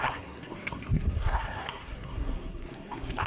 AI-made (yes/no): yes